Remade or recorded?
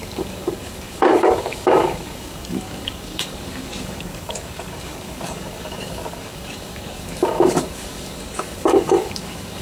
remade